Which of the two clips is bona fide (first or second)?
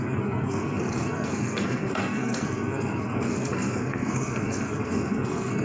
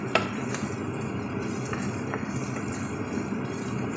second